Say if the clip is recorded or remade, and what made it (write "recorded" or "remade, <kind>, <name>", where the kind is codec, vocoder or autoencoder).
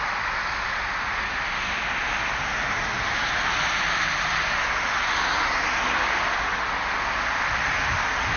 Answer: recorded